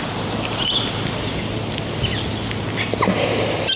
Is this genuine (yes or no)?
yes